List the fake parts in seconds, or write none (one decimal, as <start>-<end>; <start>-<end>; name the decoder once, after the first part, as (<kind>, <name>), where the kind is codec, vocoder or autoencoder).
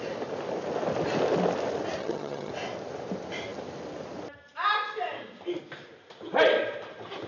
2.0-2.5 (vocoder, HiFi-GAN)